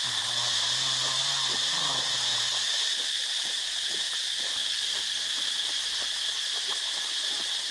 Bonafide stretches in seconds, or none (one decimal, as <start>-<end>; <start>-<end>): 0.0-7.7